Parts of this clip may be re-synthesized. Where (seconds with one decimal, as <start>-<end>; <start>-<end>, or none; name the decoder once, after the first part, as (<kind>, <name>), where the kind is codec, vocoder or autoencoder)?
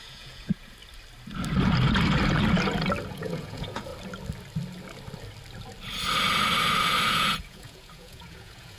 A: 0.0-0.8 (vocoder, Vocos); 3.1-3.9; 7.1-8.8